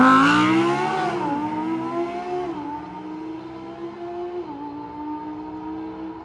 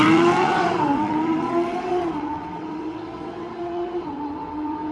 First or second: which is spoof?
second